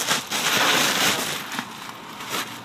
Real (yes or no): yes